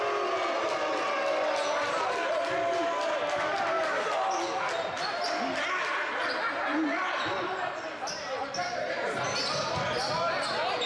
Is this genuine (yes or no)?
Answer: yes